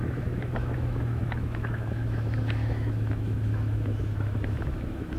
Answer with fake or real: fake